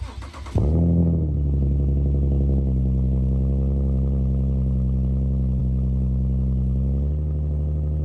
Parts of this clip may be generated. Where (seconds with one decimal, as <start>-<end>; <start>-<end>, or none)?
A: none

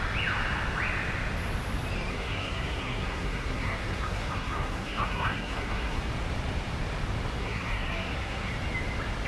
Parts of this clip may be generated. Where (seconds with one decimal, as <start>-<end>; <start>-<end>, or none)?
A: 2.1-6.0; 7.4-8.5

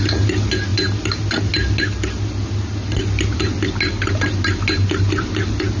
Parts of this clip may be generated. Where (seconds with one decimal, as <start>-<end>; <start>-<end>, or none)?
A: none

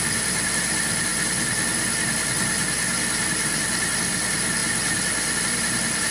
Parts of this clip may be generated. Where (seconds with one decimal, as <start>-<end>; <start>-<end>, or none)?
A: none

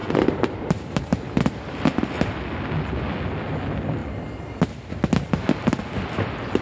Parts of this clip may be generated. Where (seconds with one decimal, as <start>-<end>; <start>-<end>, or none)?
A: 0.0-2.1